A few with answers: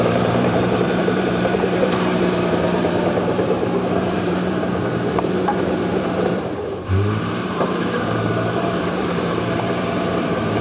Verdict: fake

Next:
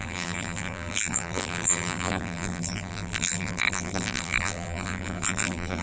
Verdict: fake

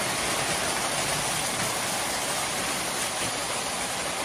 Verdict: fake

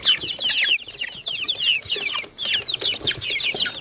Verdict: real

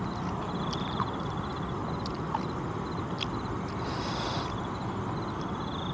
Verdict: real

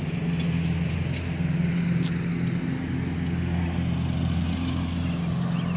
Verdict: real